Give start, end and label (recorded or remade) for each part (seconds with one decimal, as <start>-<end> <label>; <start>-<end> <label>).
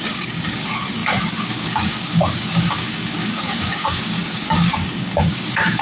0.0-5.8 remade